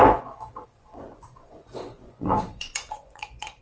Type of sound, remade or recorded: remade